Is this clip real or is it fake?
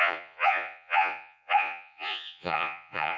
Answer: fake